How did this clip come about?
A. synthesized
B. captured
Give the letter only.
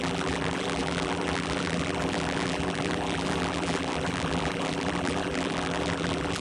A